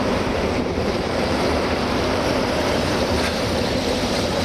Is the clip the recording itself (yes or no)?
no